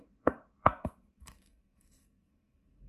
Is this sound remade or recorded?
remade